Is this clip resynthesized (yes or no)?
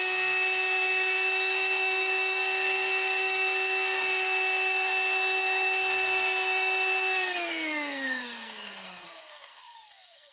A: yes